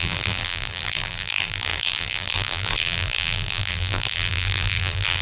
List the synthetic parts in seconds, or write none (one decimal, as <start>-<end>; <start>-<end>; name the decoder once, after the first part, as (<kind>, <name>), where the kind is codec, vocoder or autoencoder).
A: 0.0-5.2 (vocoder, BigVGAN v2)

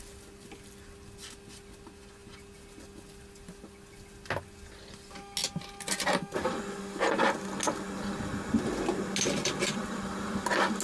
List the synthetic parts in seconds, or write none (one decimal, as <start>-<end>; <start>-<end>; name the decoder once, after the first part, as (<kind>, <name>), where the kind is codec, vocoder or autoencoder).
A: none

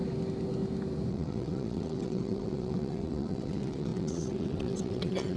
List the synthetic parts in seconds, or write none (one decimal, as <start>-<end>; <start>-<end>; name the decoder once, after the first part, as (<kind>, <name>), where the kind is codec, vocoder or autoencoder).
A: 1.1-5.4 (vocoder, WaveNeXt)

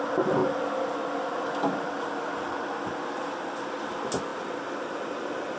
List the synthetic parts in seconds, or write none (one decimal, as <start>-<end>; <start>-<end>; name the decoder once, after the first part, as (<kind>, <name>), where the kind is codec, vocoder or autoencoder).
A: none

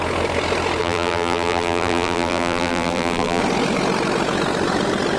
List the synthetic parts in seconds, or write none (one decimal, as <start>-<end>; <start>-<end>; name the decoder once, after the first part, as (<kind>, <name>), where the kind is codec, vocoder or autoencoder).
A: 0.8-3.4 (vocoder, BigVGAN v2)